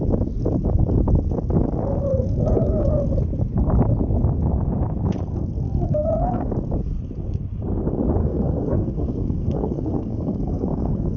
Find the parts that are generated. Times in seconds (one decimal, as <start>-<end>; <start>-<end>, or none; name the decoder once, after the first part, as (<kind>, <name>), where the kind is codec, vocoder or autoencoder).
2.1-2.9 (codec, SNAC); 5.3-6.5; 8.2-11.2

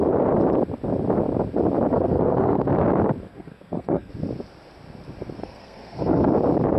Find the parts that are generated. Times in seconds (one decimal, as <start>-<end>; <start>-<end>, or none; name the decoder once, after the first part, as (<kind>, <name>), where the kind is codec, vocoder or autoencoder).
1.9-2.7 (codec, SNAC); 3.3-4.1; 5.4-6.3

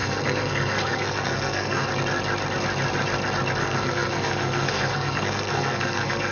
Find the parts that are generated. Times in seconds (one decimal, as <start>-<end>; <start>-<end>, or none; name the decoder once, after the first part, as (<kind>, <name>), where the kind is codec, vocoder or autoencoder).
0.0-1.9 (codec, SNAC); 3.6-6.3

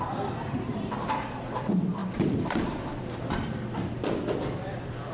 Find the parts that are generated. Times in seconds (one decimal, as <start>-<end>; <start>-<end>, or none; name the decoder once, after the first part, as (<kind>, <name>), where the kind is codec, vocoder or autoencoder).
0.0-5.1 (vocoder, BigVGAN v2)